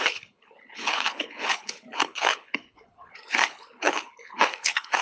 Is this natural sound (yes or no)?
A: no